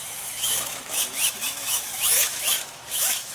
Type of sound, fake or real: fake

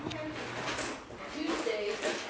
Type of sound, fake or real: real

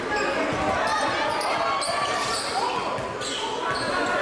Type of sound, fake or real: real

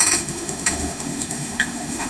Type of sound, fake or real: fake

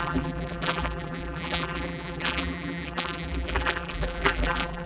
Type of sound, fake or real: fake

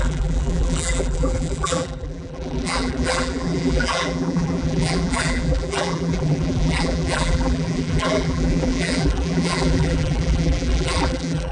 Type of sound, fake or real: fake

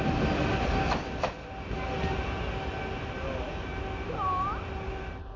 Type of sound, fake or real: real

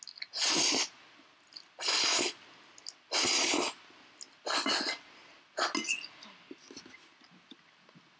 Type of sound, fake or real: real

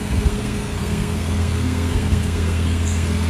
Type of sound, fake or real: fake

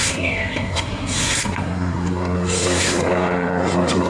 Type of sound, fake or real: fake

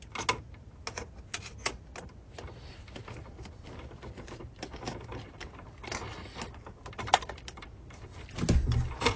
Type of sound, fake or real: real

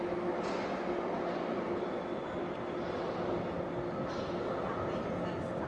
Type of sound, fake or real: real